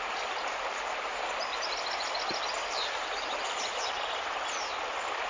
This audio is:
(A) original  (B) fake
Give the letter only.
A